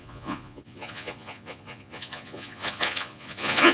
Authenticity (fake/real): fake